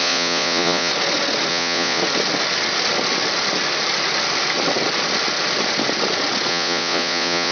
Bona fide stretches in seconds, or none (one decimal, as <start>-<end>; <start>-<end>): 0.9-1.5; 2.0-6.5